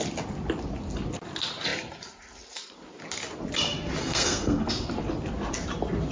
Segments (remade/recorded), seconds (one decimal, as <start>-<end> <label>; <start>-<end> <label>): 0.0-4.0 recorded; 4.0-4.7 remade; 4.7-6.1 recorded

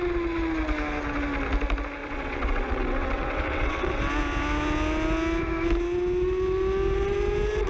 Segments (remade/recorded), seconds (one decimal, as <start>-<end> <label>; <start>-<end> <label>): 0.0-2.0 recorded; 2.0-4.0 remade; 4.0-7.7 recorded

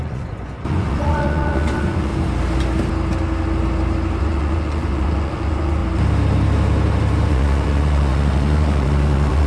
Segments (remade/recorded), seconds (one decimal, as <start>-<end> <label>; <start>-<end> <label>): 0.0-2.1 remade; 2.1-4.2 recorded; 4.2-5.8 remade; 5.8-7.3 recorded; 7.3-9.5 remade